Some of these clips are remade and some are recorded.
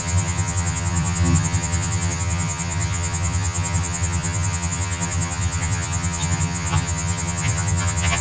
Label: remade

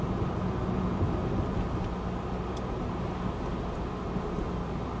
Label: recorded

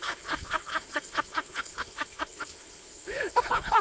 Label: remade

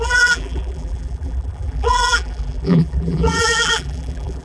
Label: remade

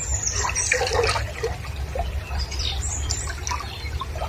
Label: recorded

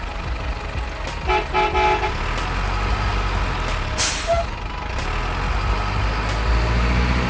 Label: recorded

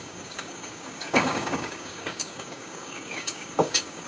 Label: remade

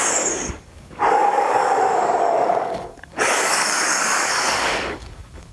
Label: remade